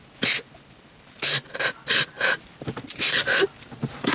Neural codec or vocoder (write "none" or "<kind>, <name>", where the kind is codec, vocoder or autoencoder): vocoder, BigVGAN v2